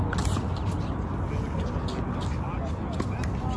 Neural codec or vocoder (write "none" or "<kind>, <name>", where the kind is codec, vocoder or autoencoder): none